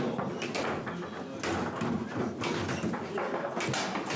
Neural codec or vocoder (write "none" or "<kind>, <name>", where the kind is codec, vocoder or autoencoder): none